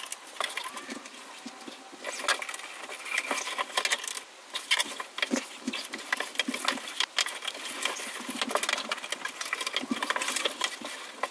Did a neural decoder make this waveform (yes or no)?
no